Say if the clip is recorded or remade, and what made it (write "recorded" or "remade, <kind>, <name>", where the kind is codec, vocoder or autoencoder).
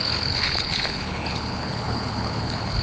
remade, codec, HILCodec